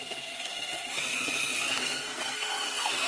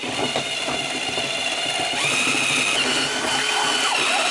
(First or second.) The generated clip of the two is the first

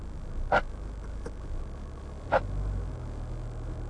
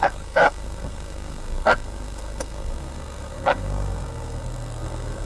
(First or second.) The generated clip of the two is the second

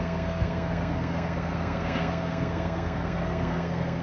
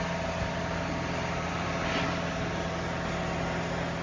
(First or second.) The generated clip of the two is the first